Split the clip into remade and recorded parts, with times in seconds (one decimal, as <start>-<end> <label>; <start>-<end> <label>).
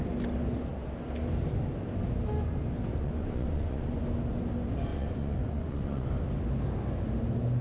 0.0-3.0 recorded; 3.0-4.0 remade; 4.0-4.9 recorded; 4.9-6.1 remade; 6.1-7.6 recorded